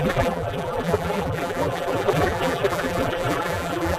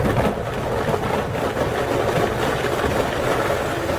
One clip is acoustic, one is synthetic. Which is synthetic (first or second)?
first